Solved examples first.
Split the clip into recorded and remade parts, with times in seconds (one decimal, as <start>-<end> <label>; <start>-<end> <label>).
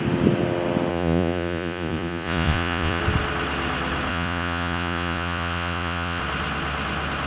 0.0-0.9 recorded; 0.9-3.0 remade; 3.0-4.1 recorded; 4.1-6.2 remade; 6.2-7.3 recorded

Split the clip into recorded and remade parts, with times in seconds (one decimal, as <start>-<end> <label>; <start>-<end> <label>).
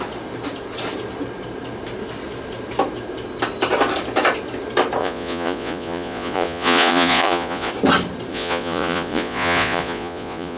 0.0-5.0 recorded; 5.0-7.7 remade; 7.7-8.3 recorded; 8.3-10.6 remade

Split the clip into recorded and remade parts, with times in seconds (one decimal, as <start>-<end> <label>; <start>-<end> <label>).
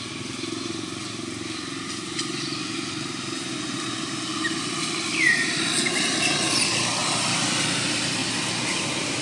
0.0-4.3 recorded; 4.3-5.7 remade; 5.7-7.0 recorded; 7.0-7.6 remade; 7.6-9.2 recorded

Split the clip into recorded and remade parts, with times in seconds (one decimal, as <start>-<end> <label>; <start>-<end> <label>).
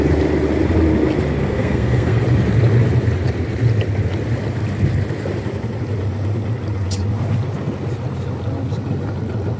0.0-1.4 recorded; 1.4-2.2 remade; 2.2-9.6 recorded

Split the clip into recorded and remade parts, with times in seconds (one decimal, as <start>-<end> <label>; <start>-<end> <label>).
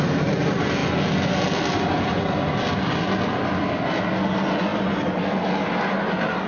0.0-6.5 recorded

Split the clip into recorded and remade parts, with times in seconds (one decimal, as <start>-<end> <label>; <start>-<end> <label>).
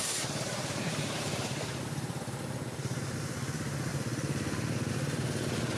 0.0-2.4 remade; 2.4-5.8 recorded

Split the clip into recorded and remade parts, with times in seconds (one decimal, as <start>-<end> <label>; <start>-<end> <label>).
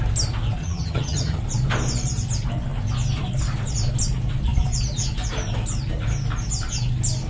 0.0-0.6 recorded; 0.6-1.4 remade; 1.4-7.3 recorded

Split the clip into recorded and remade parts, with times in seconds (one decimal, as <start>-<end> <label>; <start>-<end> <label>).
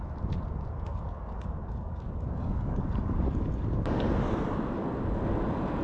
0.0-0.9 recorded; 0.9-4.1 remade; 4.1-5.8 recorded